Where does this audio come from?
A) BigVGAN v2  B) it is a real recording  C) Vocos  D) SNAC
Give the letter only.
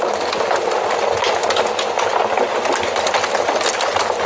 B